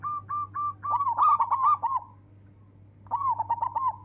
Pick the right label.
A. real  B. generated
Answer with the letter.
A